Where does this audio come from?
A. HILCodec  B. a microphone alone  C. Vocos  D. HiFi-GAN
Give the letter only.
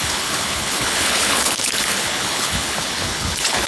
A